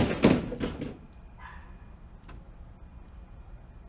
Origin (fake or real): real